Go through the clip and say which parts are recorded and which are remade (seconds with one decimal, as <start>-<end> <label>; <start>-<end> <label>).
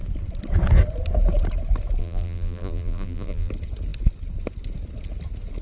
0.0-2.0 recorded; 2.0-3.5 remade; 3.5-5.6 recorded